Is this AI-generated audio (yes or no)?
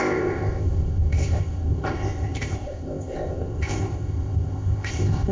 yes